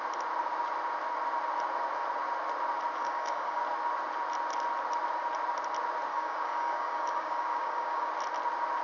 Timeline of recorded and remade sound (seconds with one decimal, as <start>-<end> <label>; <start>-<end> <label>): 0.0-3.0 recorded; 3.0-3.6 remade; 3.6-6.1 recorded; 6.1-8.1 remade; 8.1-8.8 recorded